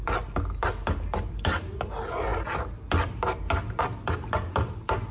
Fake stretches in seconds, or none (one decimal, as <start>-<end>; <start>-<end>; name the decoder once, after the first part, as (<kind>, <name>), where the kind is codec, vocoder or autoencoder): none